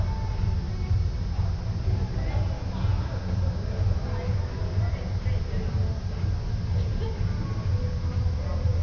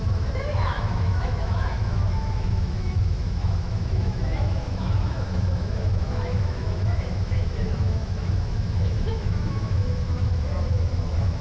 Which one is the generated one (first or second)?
second